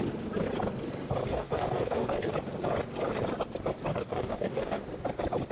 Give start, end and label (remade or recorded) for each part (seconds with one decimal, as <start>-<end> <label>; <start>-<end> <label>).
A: 0.0-1.3 recorded; 1.3-2.3 remade; 2.3-3.9 recorded; 3.9-4.8 remade; 4.8-5.5 recorded